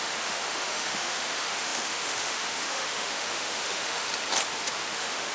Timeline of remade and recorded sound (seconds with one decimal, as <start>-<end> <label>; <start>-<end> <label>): 0.0-4.1 remade; 4.1-4.6 recorded; 4.6-5.3 remade